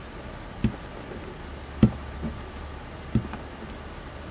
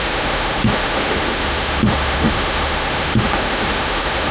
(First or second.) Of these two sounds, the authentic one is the first